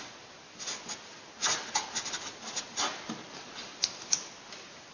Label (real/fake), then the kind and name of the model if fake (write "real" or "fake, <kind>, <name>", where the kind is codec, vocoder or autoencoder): real